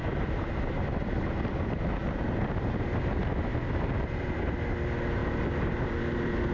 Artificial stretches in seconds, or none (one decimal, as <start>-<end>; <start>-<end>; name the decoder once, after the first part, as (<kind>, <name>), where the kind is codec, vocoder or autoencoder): none